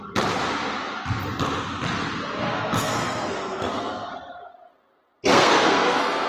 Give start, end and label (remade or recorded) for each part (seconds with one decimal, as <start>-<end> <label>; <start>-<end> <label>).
0.0-2.4 recorded; 2.4-4.1 remade; 4.1-5.3 recorded; 5.3-6.3 remade